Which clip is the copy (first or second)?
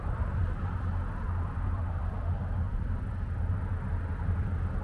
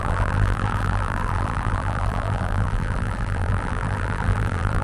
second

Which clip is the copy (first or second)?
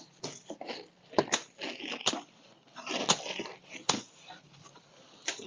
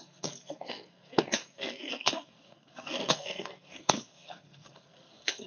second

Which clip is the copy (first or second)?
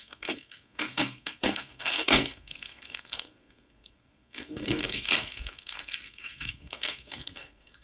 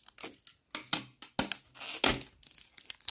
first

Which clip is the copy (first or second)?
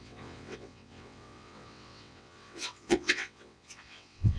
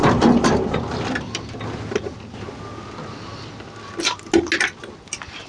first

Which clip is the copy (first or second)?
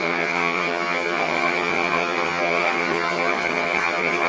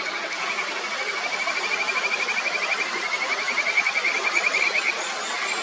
first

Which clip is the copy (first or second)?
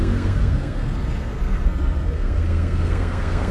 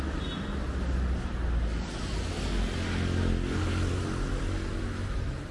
first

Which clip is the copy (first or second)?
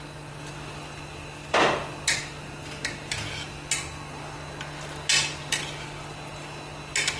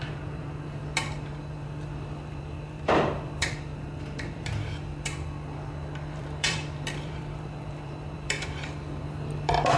second